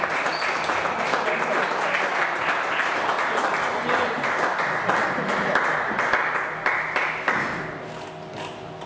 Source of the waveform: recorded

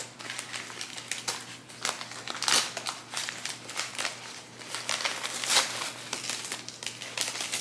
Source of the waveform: recorded